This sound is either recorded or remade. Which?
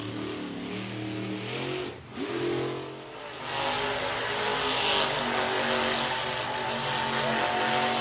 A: recorded